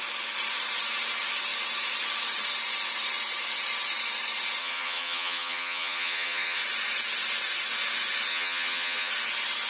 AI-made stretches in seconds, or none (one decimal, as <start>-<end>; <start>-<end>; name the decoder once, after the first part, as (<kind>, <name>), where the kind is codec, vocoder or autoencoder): 4.6-6.6 (vocoder, HiFi-GAN); 8.3-9.1